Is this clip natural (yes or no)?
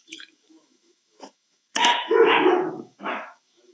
no